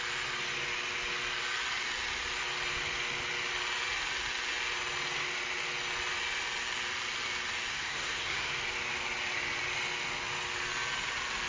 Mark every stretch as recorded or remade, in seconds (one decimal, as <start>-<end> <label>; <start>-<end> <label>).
0.0-7.7 recorded; 7.7-8.5 remade; 8.5-11.5 recorded